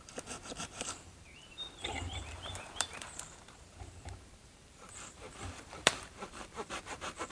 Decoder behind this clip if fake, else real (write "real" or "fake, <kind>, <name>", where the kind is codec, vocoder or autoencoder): fake, vocoder, BigVGAN v2